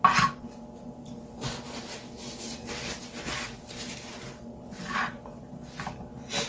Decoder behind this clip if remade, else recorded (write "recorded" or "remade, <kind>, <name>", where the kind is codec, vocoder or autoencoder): recorded